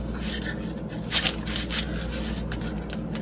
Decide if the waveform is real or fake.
real